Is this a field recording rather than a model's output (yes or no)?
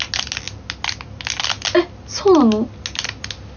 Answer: yes